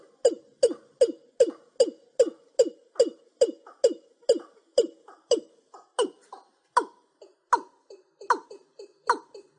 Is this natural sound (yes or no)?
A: yes